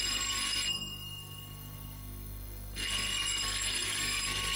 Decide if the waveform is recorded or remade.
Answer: remade